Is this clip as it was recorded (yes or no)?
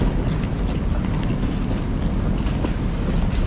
yes